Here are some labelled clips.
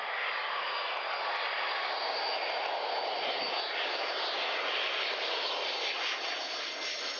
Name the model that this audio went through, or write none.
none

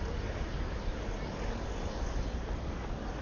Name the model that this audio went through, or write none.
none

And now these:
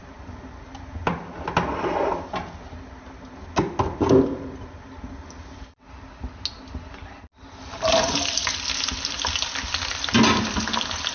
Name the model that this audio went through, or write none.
none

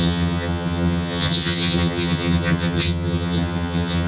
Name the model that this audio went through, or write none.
vocoder, HiFi-GAN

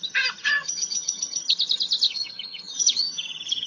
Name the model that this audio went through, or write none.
vocoder, HiFi-GAN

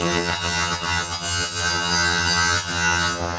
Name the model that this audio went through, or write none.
vocoder, HiFi-GAN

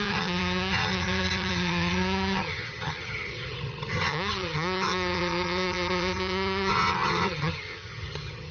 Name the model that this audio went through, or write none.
vocoder, HiFi-GAN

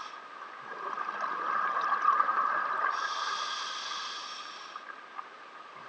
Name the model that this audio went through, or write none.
none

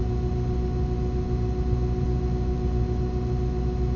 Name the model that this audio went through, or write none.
none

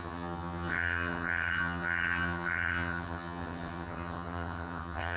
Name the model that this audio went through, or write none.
vocoder, HiFi-GAN